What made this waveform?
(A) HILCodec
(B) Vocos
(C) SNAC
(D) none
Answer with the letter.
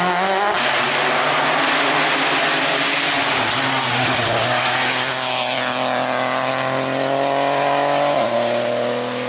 D